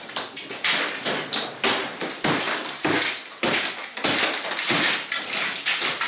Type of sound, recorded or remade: recorded